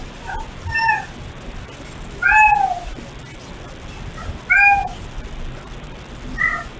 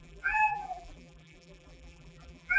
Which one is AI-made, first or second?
second